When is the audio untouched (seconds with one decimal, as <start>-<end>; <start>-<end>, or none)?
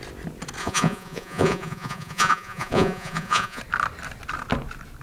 0.0-0.6; 3.6-5.0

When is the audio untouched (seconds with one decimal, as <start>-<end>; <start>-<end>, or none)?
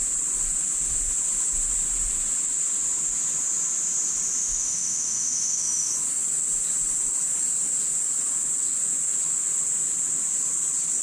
0.0-4.4; 5.9-11.0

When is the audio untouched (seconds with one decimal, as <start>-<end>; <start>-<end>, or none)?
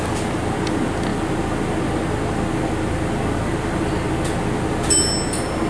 0.0-5.7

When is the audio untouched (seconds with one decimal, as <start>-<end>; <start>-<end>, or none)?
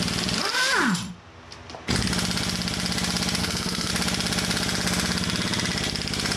0.0-3.4; 3.9-6.4